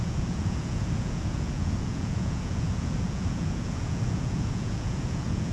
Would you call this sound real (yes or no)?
no